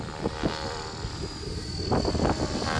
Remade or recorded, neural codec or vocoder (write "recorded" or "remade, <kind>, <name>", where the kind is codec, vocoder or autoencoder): remade, vocoder, BigVGAN v2